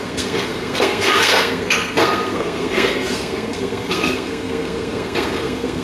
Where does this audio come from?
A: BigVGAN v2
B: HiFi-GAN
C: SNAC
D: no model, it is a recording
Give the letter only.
C